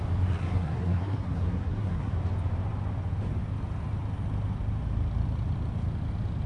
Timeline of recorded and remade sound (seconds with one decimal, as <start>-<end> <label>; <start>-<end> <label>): 0.0-0.4 recorded; 0.4-2.1 remade; 2.1-6.5 recorded